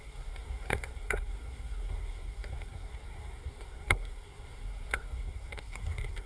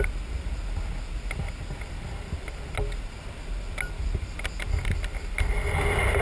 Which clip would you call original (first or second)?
second